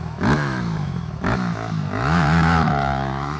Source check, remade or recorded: remade